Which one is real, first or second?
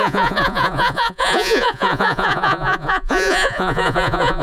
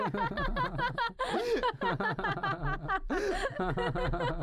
second